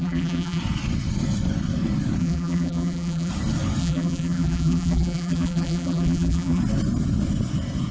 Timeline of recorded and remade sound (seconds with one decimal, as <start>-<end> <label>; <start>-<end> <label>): 0.0-0.6 remade; 0.6-2.2 recorded; 2.2-3.3 remade; 3.3-3.8 recorded; 3.8-6.6 remade; 6.6-7.9 recorded